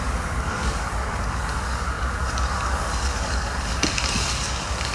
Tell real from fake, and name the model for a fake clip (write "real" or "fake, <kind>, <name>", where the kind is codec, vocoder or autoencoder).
fake, codec, DAC